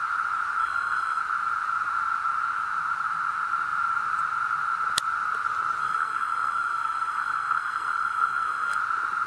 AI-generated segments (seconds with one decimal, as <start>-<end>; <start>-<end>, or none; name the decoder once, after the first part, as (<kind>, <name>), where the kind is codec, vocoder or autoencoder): 0.6-1.2 (codec, SNAC); 5.8-8.8